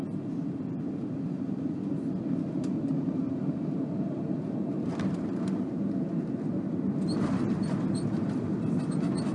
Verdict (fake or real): real